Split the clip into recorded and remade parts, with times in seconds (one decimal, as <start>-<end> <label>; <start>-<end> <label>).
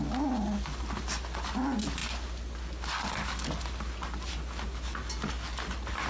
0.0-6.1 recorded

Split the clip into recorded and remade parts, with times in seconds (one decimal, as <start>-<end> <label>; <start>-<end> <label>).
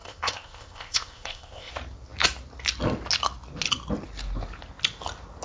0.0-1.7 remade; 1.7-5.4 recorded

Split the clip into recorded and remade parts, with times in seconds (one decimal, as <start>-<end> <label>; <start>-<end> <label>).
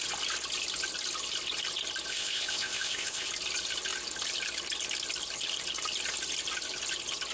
0.0-2.1 recorded; 2.1-3.3 remade; 3.3-7.3 recorded